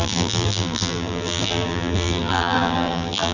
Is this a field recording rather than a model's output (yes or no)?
no